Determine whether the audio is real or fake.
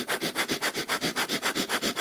real